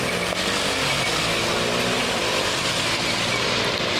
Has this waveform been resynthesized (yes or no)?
no